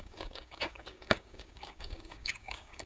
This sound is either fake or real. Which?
fake